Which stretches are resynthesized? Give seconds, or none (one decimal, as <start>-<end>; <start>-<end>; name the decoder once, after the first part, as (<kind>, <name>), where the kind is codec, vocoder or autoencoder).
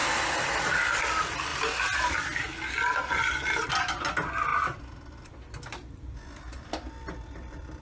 none